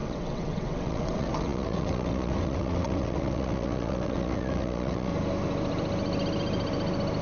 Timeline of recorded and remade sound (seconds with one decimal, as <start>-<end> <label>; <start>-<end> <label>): 0.0-5.1 remade; 5.1-7.2 recorded